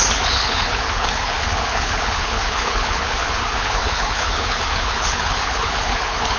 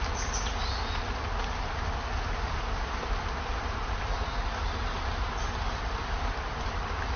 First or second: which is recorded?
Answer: second